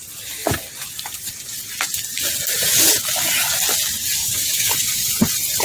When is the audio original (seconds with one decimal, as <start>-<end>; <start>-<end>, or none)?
0.0-4.2; 5.1-5.6